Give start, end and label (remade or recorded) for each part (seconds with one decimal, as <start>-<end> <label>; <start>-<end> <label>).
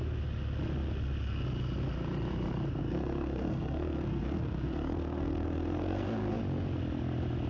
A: 0.0-2.8 recorded; 2.8-6.4 remade; 6.4-7.5 recorded